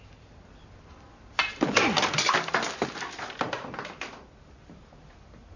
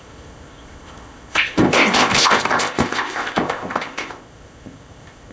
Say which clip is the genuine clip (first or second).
first